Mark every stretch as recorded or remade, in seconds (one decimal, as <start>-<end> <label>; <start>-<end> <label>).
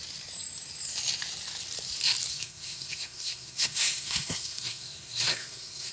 0.0-2.3 recorded; 2.3-5.9 remade